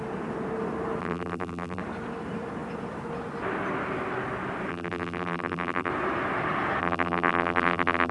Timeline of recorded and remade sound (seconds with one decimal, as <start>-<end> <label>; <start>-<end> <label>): 0.0-1.0 recorded; 1.0-1.8 remade; 1.8-4.7 recorded; 4.7-5.9 remade; 5.9-6.8 recorded; 6.8-8.1 remade